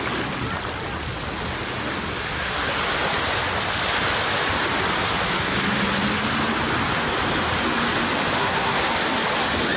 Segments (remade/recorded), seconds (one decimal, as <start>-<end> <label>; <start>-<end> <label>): 0.0-8.4 recorded; 8.4-8.9 remade; 8.9-9.8 recorded